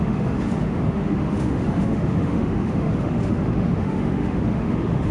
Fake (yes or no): yes